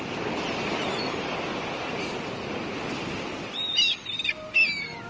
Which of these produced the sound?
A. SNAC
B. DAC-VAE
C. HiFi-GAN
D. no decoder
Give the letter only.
D